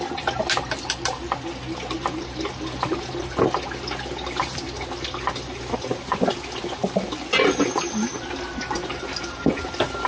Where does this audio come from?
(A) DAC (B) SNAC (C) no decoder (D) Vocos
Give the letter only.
C